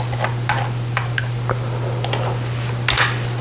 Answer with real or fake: real